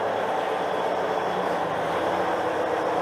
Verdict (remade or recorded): recorded